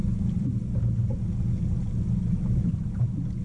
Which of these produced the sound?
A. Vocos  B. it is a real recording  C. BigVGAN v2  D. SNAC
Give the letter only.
B